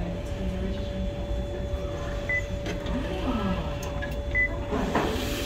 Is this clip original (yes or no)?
yes